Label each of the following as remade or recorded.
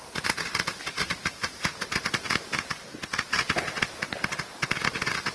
recorded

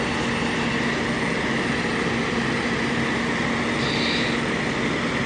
recorded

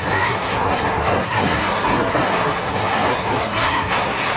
remade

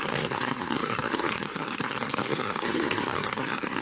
remade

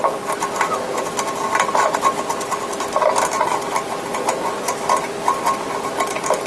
recorded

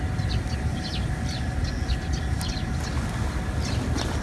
recorded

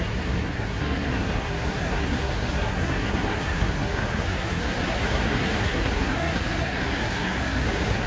remade